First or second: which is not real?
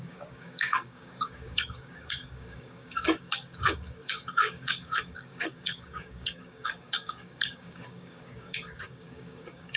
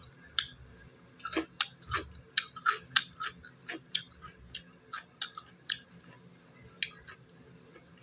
first